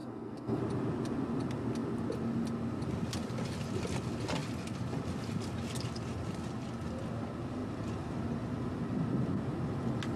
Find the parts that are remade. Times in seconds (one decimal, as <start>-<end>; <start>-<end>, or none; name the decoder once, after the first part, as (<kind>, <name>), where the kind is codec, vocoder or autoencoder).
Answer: 0.0-0.6 (codec, SNAC)